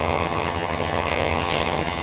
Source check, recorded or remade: remade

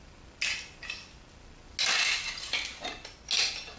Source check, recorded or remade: recorded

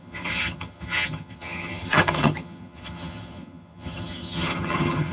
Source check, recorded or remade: remade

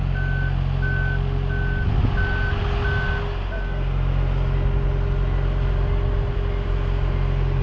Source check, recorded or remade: recorded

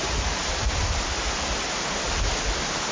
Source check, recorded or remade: recorded